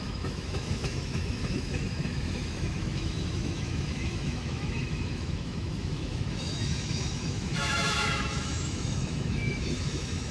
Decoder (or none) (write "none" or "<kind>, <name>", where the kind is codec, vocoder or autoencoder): autoencoder, DAC-VAE